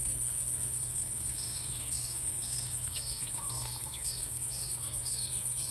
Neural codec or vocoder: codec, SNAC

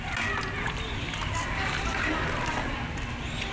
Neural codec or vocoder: none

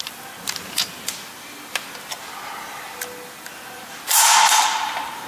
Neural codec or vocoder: none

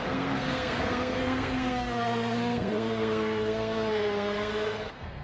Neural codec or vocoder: codec, SNAC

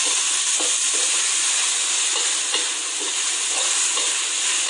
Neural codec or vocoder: none